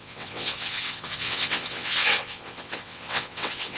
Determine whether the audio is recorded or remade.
remade